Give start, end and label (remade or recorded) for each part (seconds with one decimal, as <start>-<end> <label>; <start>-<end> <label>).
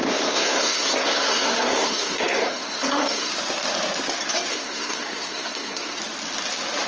0.0-3.3 remade; 3.3-4.5 recorded; 4.5-6.0 remade; 6.0-6.9 recorded